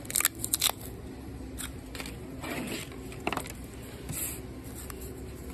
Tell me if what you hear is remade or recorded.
recorded